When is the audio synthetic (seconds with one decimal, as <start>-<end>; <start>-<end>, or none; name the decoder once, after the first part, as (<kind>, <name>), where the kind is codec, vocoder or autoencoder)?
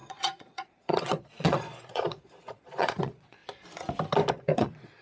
0.0-3.4 (vocoder, Vocos); 4.3-5.0